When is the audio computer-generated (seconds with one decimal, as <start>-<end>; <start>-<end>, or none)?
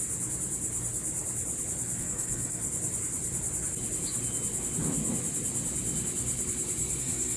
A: 2.0-2.6; 7.0-7.4